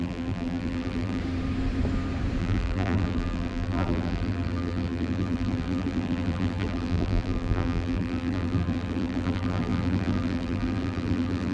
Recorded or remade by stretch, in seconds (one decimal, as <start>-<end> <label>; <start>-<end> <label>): 0.0-1.2 remade; 1.2-2.4 recorded; 2.4-11.5 remade